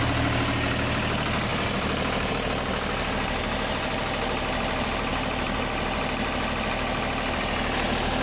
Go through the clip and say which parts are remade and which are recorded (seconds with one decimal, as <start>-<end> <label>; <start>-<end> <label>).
0.0-1.5 recorded; 1.5-2.3 remade; 2.3-8.2 recorded